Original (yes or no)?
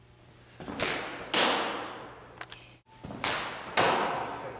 yes